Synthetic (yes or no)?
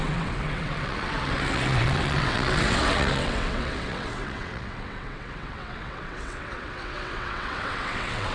yes